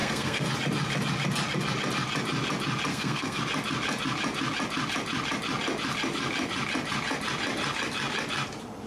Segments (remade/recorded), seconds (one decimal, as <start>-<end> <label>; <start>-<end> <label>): 0.0-0.5 remade; 0.5-2.9 recorded; 2.9-3.4 remade; 3.4-8.9 recorded